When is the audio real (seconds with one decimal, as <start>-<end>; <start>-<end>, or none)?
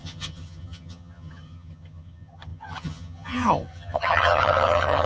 none